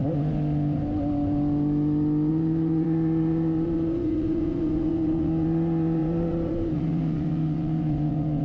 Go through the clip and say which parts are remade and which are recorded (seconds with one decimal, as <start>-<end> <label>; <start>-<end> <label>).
0.0-2.3 recorded; 2.3-8.4 remade